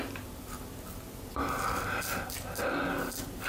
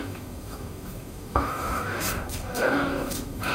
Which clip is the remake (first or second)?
second